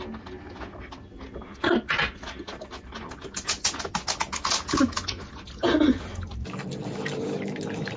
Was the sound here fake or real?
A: real